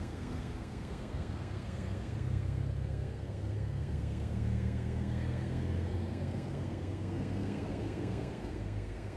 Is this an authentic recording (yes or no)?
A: no